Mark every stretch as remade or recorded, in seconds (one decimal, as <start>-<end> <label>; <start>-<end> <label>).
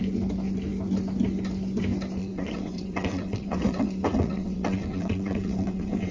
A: 0.0-2.2 recorded; 2.2-6.1 remade